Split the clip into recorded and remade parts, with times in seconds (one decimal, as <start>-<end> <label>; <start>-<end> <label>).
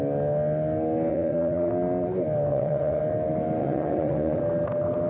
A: 0.0-1.1 recorded; 1.1-1.7 remade; 1.7-2.5 recorded; 2.5-3.0 remade; 3.0-3.6 recorded; 3.6-4.4 remade; 4.4-5.1 recorded